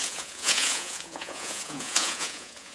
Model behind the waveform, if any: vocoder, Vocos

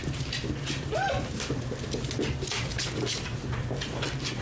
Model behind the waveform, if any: none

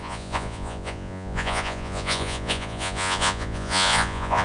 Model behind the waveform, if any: vocoder, Vocos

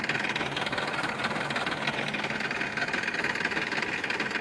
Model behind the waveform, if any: none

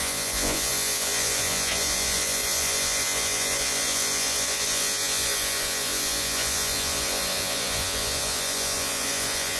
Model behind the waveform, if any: vocoder, Vocos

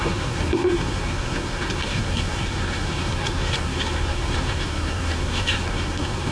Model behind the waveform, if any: codec, SNAC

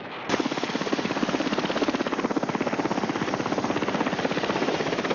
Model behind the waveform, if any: none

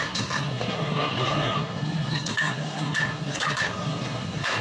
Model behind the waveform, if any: codec, SNAC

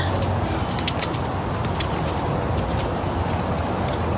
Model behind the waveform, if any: none